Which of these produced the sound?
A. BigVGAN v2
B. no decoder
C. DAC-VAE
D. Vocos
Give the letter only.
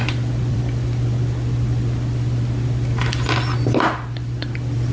A